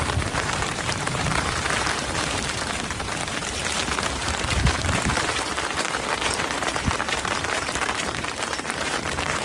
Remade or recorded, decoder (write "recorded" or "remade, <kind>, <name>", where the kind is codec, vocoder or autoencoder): remade, vocoder, BigVGAN v2